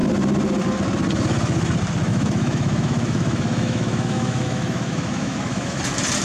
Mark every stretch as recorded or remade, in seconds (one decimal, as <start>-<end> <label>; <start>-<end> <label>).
0.0-2.1 recorded; 2.1-5.8 remade; 5.8-6.2 recorded